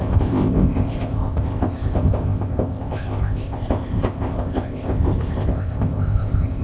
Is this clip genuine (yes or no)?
no